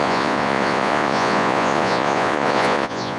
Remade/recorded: remade